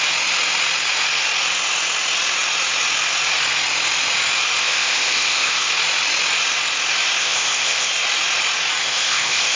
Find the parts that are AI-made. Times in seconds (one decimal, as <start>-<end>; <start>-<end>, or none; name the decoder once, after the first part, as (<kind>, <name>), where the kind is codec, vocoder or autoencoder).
4.6-5.7 (codec, ZipCodec); 7.2-7.9; 8.8-9.6